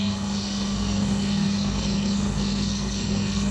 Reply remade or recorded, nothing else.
remade